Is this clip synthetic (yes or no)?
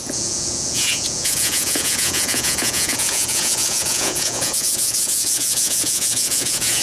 yes